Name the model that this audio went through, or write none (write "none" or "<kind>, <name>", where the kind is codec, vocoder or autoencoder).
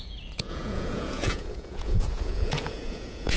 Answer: vocoder, Vocos